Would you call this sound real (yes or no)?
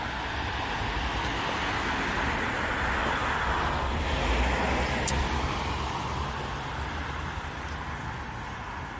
yes